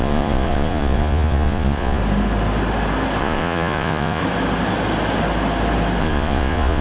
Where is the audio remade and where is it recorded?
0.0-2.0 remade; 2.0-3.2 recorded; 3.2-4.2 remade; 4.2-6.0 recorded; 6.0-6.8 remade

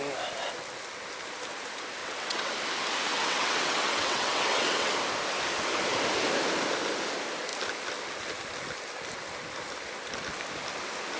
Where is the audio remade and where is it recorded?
0.0-2.0 recorded; 2.0-2.5 remade; 2.5-3.1 recorded; 3.1-4.9 remade; 4.9-11.2 recorded

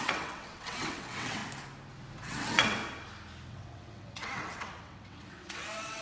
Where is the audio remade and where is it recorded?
0.0-1.4 remade; 1.4-2.1 recorded; 2.1-2.8 remade; 2.8-3.5 recorded; 3.5-6.0 remade

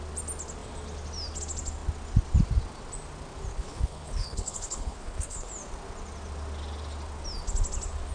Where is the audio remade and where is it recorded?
0.0-3.5 recorded; 3.5-5.5 remade; 5.5-8.1 recorded

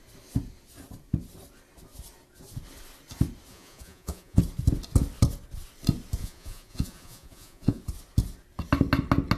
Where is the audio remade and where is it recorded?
0.0-3.5 recorded; 3.5-4.4 remade; 4.4-6.2 recorded; 6.2-7.8 remade; 7.8-9.4 recorded

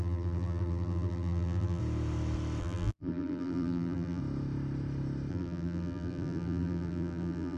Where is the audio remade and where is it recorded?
0.0-1.8 remade; 1.8-2.6 recorded; 2.6-4.2 remade; 4.2-5.3 recorded; 5.3-7.6 remade

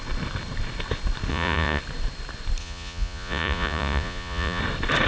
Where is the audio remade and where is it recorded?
0.0-1.3 recorded; 1.3-1.8 remade; 1.8-2.6 recorded; 2.6-4.6 remade; 4.6-5.1 recorded